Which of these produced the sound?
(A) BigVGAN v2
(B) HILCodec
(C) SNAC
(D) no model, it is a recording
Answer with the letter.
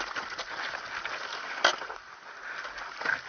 D